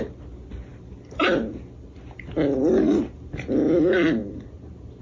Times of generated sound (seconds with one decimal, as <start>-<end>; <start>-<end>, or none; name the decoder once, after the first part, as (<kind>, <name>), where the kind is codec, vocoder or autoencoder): none